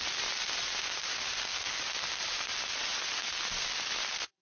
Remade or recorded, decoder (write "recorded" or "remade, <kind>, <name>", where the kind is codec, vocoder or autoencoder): recorded